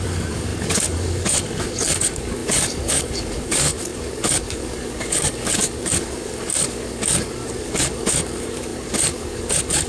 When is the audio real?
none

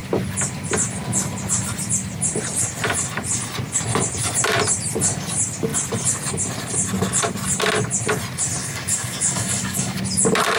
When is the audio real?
0.0-8.6; 10.0-10.6

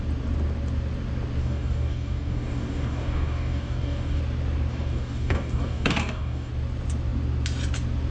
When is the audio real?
0.0-1.4; 4.2-4.7; 6.5-8.1

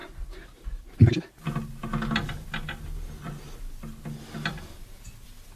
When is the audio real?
0.0-5.6

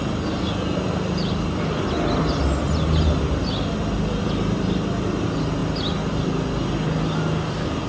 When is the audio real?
0.0-7.9

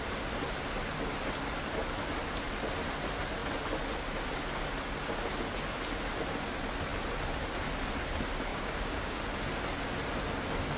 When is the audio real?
0.0-8.5; 9.2-10.8